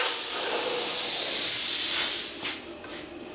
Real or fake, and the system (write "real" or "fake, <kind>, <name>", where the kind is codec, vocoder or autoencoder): real